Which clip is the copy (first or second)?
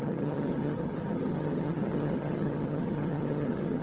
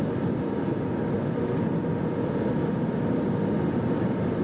first